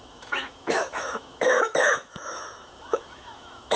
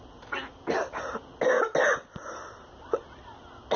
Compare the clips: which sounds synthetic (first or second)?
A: first